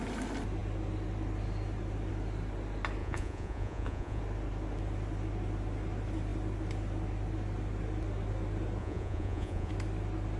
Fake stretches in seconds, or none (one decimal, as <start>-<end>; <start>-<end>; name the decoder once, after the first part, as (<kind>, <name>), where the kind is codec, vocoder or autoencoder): 3.0-4.2 (vocoder, Vocos); 8.8-9.7